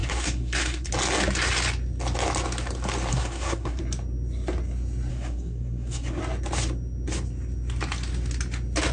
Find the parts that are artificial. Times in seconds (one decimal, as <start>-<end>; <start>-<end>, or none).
0.0-0.9; 3.1-3.8; 5.1-6.2